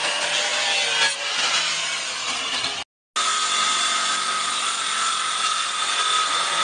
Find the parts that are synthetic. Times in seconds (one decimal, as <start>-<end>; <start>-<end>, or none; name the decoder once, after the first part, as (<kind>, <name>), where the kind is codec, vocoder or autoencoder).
none